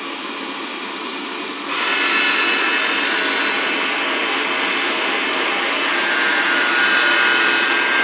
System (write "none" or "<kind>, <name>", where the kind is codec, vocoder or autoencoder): none